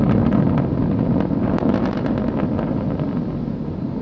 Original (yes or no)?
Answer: yes